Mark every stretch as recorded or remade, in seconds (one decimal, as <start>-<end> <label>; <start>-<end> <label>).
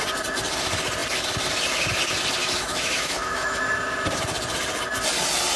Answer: 0.0-2.4 recorded; 2.4-3.6 remade; 3.6-5.6 recorded